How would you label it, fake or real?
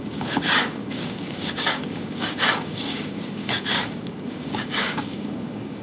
fake